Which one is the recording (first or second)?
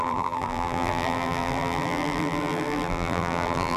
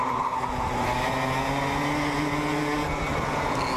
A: second